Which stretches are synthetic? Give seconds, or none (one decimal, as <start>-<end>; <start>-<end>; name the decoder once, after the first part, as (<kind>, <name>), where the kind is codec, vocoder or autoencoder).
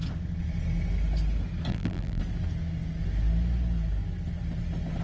1.7-2.2 (vocoder, BigVGAN v2)